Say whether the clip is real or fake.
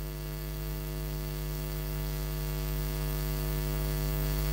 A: fake